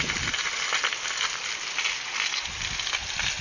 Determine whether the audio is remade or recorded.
recorded